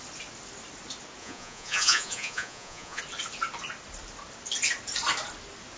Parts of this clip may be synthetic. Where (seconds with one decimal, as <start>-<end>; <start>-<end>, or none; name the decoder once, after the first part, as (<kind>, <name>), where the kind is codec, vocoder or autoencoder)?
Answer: 1.2-3.0 (vocoder, Vocos)